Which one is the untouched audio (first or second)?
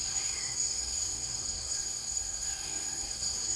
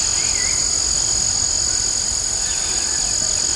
second